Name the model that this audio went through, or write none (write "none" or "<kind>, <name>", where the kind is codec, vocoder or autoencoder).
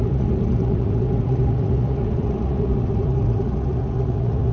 vocoder, Vocos